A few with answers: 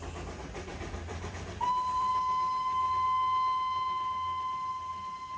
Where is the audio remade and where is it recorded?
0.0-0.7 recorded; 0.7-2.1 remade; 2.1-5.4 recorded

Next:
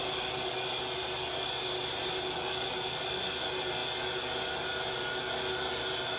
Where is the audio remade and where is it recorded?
0.0-6.2 recorded

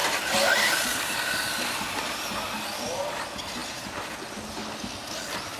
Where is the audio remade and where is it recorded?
0.0-2.3 remade; 2.3-5.6 recorded